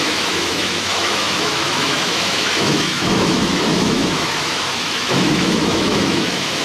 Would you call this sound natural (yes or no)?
no